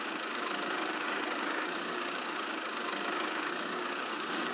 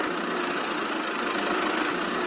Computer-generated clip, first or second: first